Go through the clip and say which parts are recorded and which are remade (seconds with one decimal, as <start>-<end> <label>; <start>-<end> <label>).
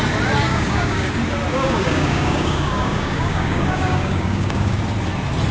0.0-0.5 recorded; 0.5-1.1 remade; 1.1-1.5 recorded; 1.5-4.8 remade; 4.8-5.5 recorded